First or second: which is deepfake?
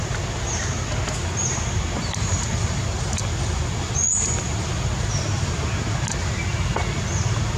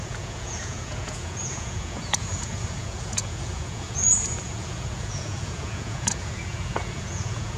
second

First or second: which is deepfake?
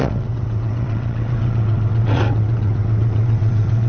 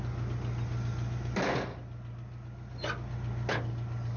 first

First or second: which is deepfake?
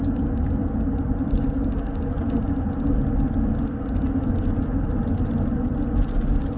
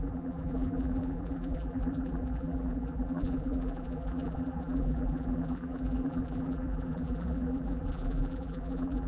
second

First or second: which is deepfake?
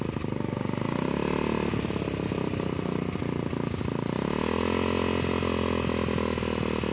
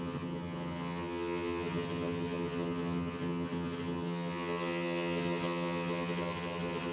second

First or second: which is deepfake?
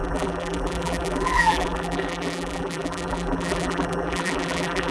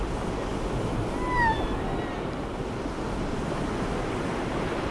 first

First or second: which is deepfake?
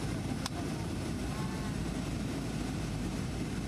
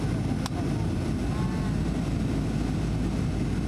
first